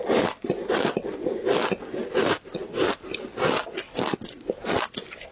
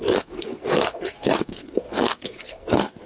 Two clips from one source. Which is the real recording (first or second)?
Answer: first